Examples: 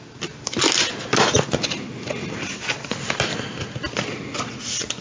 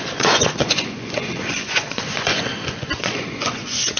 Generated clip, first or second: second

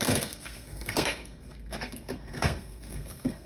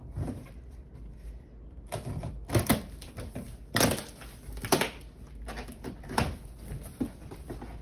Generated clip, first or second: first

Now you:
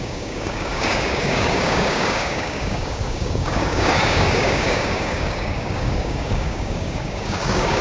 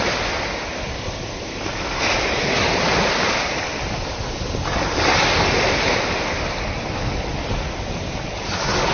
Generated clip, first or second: first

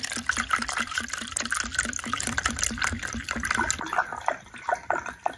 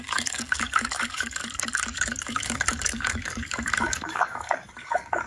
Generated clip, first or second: second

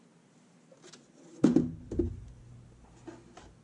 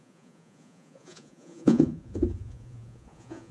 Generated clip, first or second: second